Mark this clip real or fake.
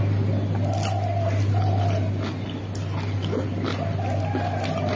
real